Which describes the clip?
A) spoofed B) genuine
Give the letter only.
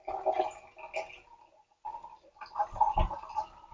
B